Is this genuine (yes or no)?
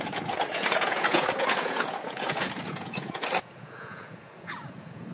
no